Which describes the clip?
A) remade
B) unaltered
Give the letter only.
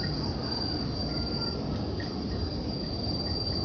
B